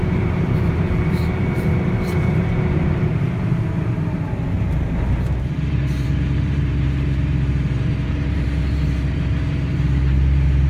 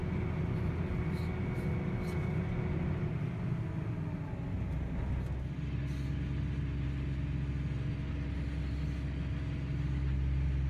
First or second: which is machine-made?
first